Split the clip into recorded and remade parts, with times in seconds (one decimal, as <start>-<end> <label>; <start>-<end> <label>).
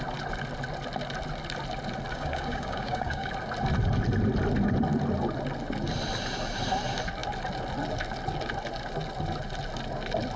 0.0-2.1 recorded; 2.1-3.3 remade; 3.3-10.4 recorded